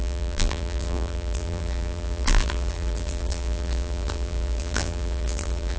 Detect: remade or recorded remade